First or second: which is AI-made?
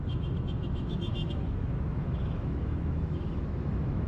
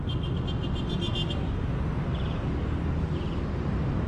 first